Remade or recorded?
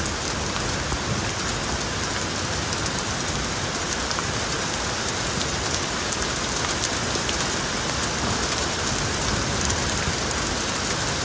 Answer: recorded